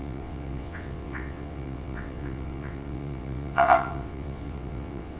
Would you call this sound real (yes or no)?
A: no